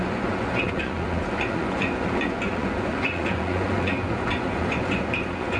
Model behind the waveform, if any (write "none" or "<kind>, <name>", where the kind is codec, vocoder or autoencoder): vocoder, Vocos